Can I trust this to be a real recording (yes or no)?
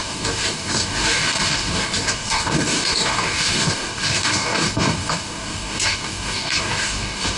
no